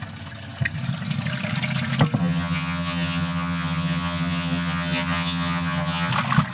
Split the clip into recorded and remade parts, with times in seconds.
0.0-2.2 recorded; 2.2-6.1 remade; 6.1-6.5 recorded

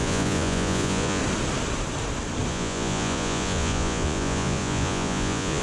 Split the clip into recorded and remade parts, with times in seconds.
0.0-1.2 remade; 1.2-2.5 recorded; 2.5-5.6 remade